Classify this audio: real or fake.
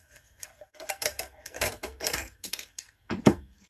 fake